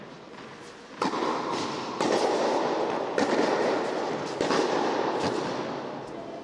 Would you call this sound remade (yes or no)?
no